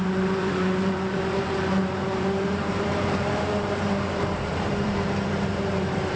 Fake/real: fake